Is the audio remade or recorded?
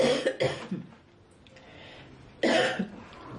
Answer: recorded